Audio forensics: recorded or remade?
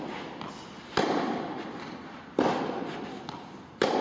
recorded